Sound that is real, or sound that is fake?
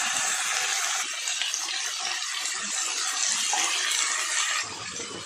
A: real